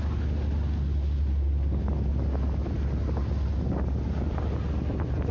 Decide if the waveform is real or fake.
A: real